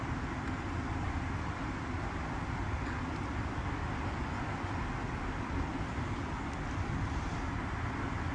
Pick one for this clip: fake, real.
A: real